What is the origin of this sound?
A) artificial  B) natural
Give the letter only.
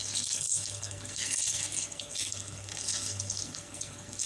A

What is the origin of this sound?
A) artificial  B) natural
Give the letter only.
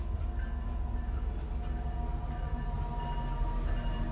B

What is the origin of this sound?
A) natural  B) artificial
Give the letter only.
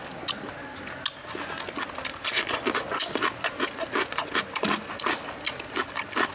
A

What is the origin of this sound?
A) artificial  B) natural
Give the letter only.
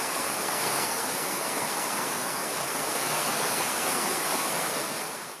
A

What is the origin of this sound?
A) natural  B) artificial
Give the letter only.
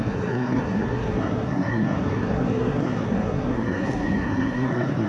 B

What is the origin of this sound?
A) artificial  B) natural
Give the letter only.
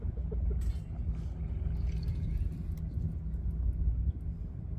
B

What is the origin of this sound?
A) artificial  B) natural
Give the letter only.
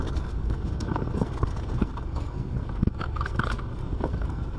A